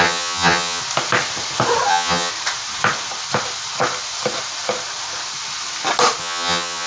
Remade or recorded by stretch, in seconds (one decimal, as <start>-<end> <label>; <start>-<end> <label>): 0.0-0.8 remade; 0.8-1.9 recorded; 1.9-2.3 remade; 2.3-6.2 recorded; 6.2-6.9 remade